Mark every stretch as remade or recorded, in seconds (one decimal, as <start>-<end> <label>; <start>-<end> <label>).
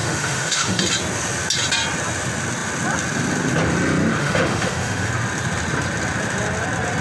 0.0-0.8 remade; 0.8-4.2 recorded; 4.2-5.1 remade; 5.1-7.0 recorded